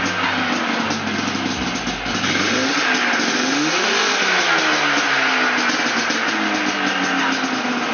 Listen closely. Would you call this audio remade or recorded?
recorded